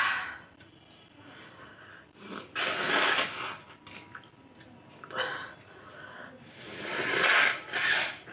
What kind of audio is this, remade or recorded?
recorded